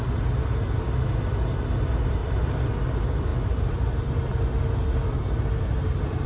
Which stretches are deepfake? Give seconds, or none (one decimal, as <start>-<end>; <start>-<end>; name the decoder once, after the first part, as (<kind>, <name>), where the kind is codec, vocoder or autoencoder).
2.2-2.7 (vocoder, BigVGAN v2)